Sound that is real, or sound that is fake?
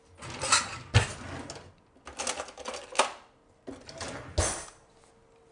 real